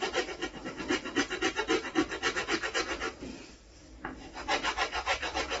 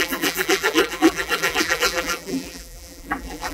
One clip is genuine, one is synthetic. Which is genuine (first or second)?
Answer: first